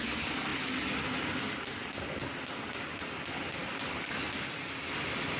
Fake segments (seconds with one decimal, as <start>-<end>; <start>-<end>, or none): none